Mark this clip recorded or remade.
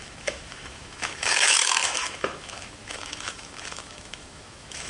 remade